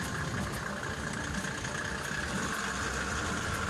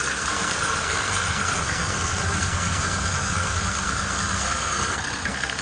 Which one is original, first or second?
first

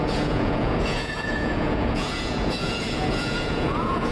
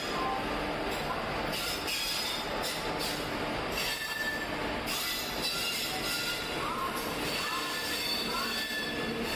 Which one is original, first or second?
second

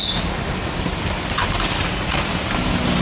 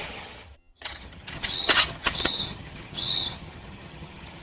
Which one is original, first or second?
first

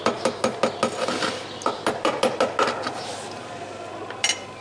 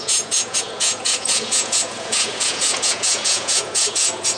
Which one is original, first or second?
first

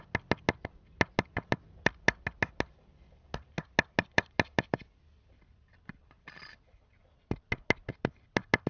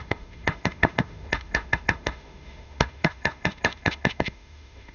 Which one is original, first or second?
first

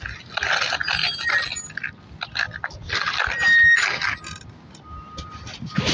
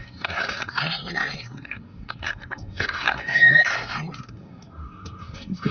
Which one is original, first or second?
first